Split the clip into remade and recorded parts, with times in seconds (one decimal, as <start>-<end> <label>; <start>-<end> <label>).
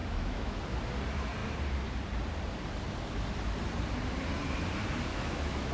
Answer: 0.0-0.6 remade; 0.6-5.1 recorded; 5.1-5.7 remade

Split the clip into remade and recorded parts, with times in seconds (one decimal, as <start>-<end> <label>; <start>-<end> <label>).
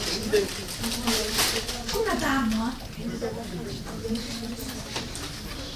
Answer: 0.0-5.8 recorded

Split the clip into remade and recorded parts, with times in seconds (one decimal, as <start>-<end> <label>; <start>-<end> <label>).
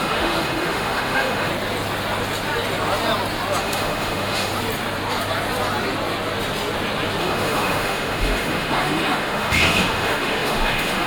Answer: 0.0-1.5 remade; 1.5-3.6 recorded; 3.6-4.5 remade; 4.5-7.2 recorded; 7.2-11.1 remade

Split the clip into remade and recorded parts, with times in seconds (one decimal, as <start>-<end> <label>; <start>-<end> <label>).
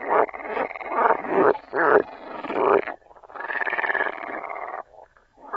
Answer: 0.0-0.9 recorded; 0.9-1.7 remade; 1.7-3.2 recorded; 3.2-5.6 remade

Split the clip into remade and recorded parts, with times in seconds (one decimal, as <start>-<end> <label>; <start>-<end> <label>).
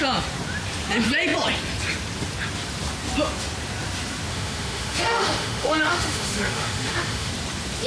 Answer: 0.0-4.3 recorded; 4.3-7.3 remade; 7.3-7.9 recorded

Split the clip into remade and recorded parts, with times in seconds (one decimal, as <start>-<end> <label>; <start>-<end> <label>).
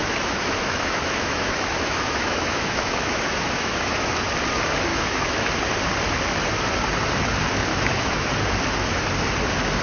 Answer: 0.0-4.1 remade; 4.1-4.9 recorded; 4.9-5.5 remade; 5.5-7.7 recorded; 7.7-8.3 remade; 8.3-9.8 recorded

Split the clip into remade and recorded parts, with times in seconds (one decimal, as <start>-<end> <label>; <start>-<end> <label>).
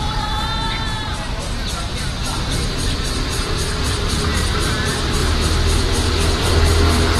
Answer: 0.0-7.2 recorded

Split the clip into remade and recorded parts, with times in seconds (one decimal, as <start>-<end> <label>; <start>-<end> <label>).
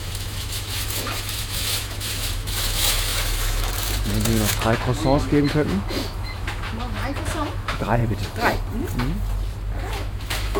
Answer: 0.0-8.0 remade; 8.0-9.9 recorded; 9.9-10.6 remade